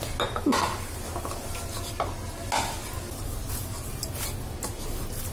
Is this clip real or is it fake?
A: real